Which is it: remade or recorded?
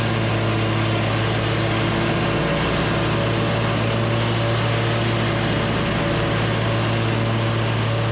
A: recorded